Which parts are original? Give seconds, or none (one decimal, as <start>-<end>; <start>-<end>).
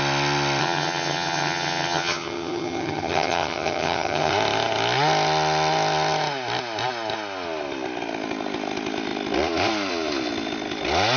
0.0-0.6; 4.3-11.2